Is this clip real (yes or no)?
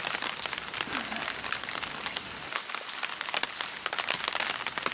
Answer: yes